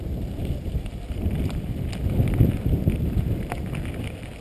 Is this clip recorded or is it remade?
remade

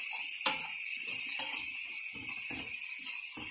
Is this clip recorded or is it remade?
recorded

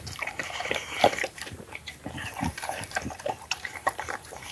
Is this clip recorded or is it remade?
remade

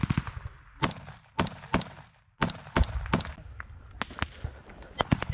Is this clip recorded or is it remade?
recorded